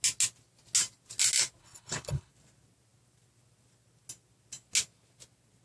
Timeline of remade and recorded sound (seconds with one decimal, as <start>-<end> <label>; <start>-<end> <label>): 0.0-1.6 recorded; 1.6-2.3 remade; 2.3-5.6 recorded

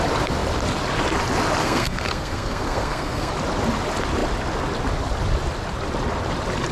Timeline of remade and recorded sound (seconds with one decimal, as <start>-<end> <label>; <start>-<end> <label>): 0.0-1.6 recorded; 1.6-3.3 remade; 3.3-6.7 recorded